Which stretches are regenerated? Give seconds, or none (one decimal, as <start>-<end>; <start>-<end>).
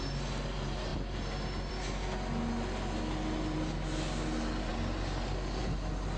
none